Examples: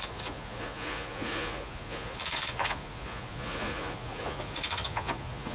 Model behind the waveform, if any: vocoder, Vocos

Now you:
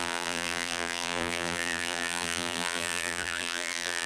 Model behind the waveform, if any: vocoder, BigVGAN v2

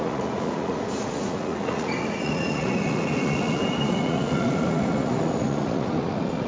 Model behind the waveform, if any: vocoder, Vocos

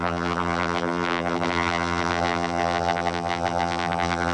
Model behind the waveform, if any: vocoder, BigVGAN v2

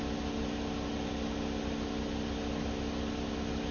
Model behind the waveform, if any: none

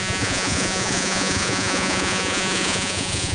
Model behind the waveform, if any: vocoder, Vocos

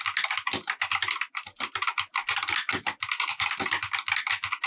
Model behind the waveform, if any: none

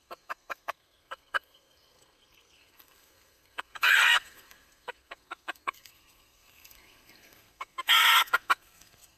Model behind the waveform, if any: codec, SNAC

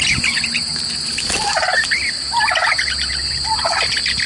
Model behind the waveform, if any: none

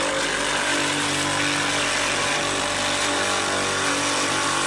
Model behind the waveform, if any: none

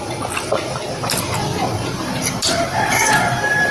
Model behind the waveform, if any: none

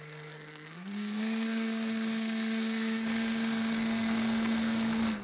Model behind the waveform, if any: codec, SNAC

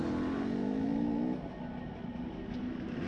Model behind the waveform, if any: none